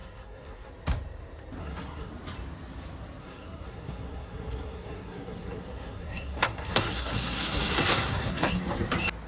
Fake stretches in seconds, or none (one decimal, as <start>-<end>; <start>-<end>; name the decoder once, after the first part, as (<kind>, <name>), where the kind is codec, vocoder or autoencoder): 0.0-0.7 (codec, SNAC); 1.6-2.1; 3.2-8.5